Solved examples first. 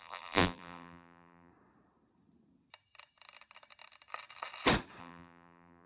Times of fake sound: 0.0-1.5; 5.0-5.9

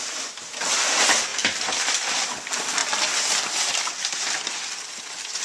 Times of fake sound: 1.3-1.8